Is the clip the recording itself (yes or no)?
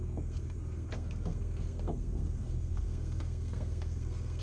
no